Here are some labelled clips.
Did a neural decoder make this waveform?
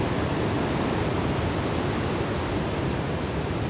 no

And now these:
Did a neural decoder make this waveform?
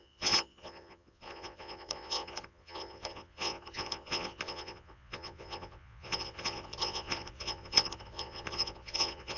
yes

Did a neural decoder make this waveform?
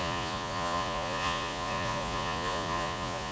yes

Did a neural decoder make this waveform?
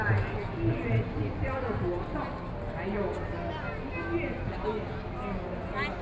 no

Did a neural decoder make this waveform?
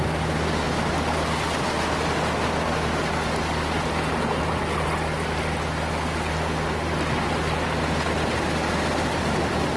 no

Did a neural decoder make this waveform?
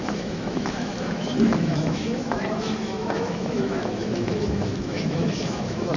yes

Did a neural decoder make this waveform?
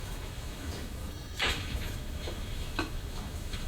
yes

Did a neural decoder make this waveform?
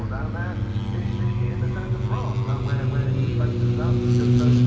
no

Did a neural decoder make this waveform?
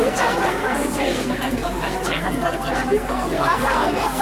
yes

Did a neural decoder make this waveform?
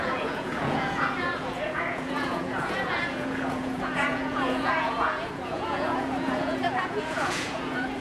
yes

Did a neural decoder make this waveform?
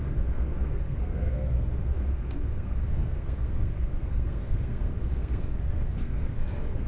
yes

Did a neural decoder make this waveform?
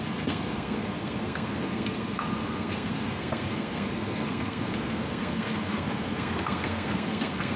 yes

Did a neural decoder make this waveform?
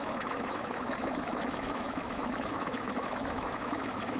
yes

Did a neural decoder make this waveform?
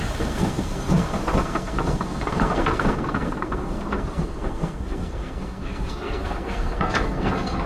yes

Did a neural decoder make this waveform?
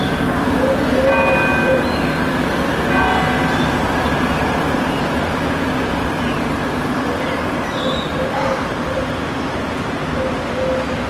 no